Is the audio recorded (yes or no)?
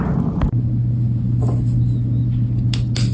yes